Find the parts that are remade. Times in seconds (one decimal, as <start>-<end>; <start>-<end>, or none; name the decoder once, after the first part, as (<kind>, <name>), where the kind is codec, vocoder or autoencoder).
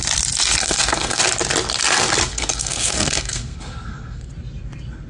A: 0.6-1.2 (codec, SNAC); 2.3-4.3